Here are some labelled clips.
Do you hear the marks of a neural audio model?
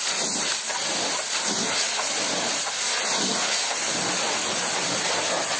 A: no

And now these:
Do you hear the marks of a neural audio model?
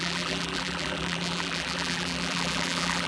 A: yes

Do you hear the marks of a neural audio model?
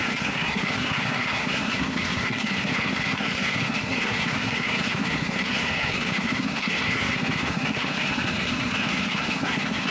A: yes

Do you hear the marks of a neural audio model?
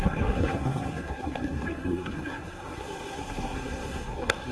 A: yes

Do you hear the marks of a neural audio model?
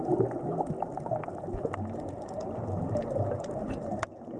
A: no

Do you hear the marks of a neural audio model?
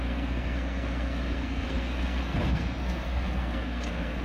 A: yes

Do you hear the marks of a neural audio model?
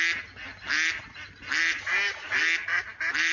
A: no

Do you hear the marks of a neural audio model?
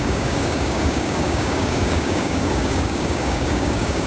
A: yes